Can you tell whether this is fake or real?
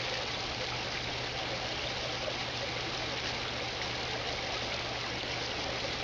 real